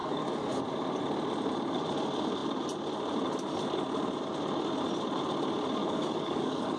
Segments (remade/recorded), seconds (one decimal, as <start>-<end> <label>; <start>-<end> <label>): 0.0-0.6 remade; 0.6-5.8 recorded; 5.8-6.8 remade